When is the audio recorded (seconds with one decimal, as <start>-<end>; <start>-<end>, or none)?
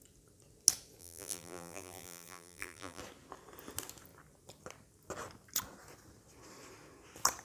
0.0-1.0; 3.0-7.4